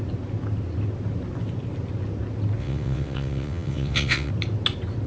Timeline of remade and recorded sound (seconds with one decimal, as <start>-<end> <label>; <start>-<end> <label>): 0.0-2.6 recorded; 2.6-4.3 remade; 4.3-5.1 recorded